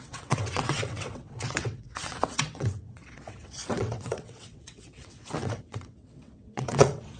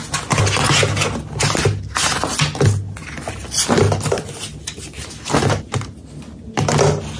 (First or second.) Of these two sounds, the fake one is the first